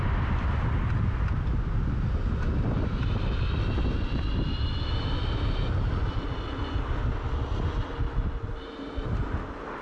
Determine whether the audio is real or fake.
real